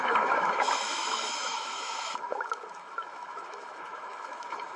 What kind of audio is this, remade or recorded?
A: remade